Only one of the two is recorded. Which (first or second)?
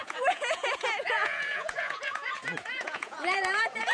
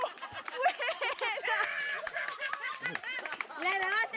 second